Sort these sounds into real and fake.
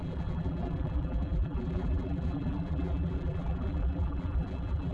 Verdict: fake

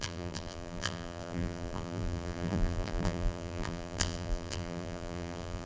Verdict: fake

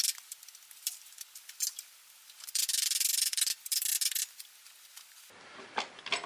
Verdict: real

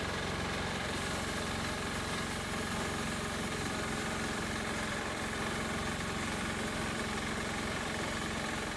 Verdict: fake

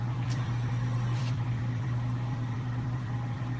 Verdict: fake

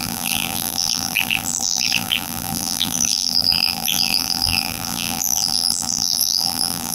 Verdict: fake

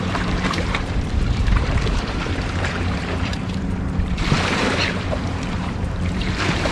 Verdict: fake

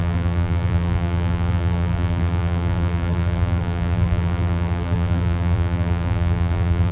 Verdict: fake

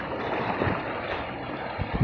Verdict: real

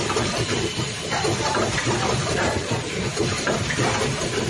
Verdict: fake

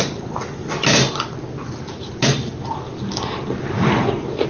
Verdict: real